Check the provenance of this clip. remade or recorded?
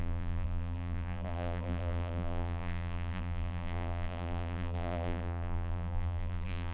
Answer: remade